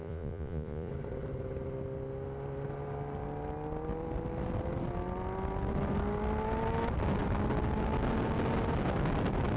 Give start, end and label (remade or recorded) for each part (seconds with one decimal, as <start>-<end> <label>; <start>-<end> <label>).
0.0-0.9 remade; 0.9-9.6 recorded